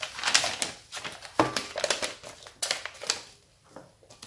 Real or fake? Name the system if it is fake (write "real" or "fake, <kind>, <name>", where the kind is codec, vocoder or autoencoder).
real